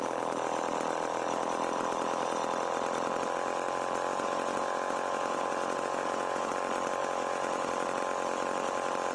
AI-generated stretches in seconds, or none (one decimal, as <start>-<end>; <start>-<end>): 4.1-6.5; 7.0-7.7